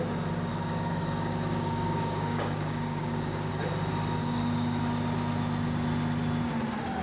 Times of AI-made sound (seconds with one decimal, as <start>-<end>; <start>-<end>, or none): 0.5-3.5; 4.2-4.8